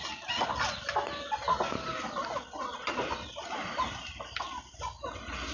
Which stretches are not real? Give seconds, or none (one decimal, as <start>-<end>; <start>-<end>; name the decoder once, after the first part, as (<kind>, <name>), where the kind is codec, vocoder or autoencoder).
none